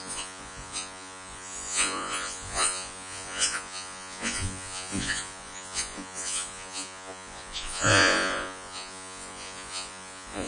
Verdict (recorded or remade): remade